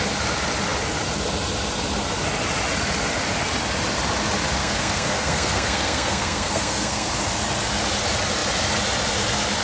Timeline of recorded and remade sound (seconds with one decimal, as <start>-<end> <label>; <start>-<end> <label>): 0.0-4.6 recorded; 4.6-7.1 remade; 7.1-9.6 recorded